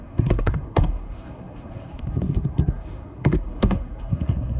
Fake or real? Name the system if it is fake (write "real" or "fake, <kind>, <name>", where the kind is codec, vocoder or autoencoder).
fake, codec, SNAC